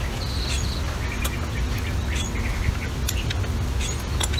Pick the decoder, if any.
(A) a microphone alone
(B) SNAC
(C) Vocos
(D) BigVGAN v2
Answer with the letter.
A